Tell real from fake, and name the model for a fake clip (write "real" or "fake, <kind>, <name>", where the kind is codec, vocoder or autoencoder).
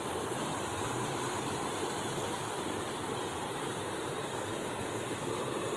real